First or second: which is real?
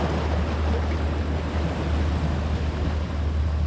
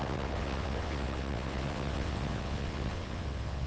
first